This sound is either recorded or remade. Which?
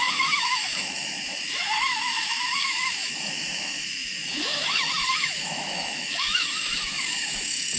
remade